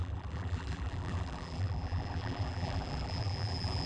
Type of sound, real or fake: fake